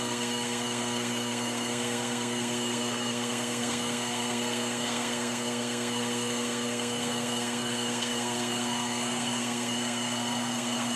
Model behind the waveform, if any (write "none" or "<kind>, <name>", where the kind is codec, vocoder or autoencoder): codec, SNAC